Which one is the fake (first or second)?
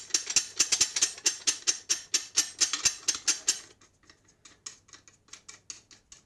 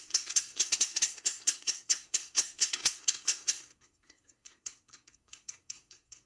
second